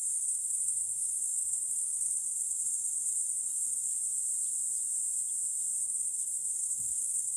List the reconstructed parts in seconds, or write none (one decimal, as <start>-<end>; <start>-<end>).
0.0-3.9; 5.8-7.4